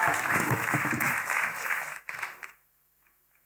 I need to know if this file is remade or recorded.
remade